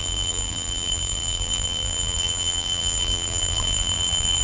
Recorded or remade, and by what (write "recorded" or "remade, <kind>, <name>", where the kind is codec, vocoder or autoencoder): remade, vocoder, BigVGAN v2